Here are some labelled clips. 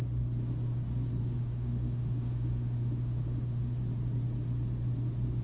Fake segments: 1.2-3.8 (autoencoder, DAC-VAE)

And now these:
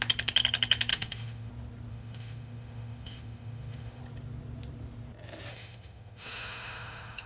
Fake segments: 0.9-1.5 (autoencoder, DAC-VAE); 1.9-4.0; 5.5-7.3

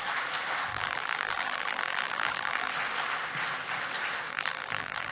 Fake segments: 0.7-2.7 (vocoder, BigVGAN v2); 4.3-5.1